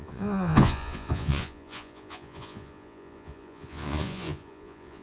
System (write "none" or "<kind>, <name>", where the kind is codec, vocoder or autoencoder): vocoder, Vocos